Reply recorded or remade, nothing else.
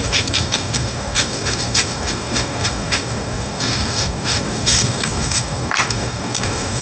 remade